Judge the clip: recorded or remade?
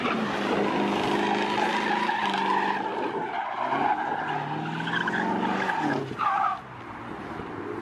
recorded